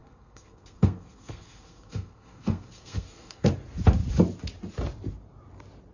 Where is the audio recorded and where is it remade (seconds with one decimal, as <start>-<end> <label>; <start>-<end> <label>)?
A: 0.0-3.5 remade; 3.5-5.9 recorded